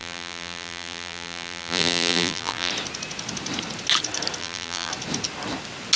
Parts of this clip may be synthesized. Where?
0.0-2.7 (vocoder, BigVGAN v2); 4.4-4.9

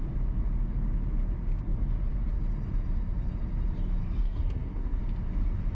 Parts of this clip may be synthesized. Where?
4.2-5.0 (codec, SNAC)

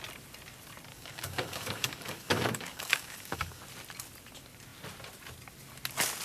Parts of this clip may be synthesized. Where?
0.9-3.6 (codec, DAC)

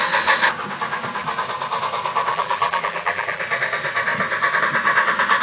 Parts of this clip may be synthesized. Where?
2.3-3.4 (vocoder, BigVGAN v2)

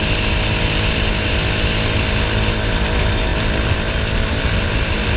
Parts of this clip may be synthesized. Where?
none